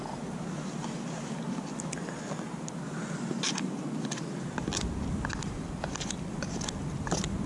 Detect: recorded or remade recorded